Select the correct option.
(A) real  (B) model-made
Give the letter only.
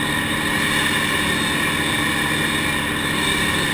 A